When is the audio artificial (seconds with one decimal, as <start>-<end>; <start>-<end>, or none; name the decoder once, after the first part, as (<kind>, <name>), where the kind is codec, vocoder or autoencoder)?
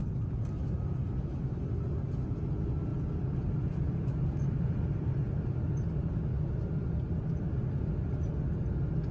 0.0-1.7 (vocoder, BigVGAN v2); 2.9-5.4; 6.3-7.5